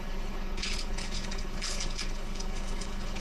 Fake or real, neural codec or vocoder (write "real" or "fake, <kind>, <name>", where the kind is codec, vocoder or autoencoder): fake, codec, HILCodec